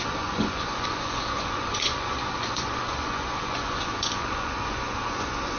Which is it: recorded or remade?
remade